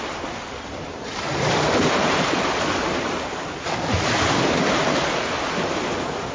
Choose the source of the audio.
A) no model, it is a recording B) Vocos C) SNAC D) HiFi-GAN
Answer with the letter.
A